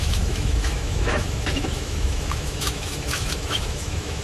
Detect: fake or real fake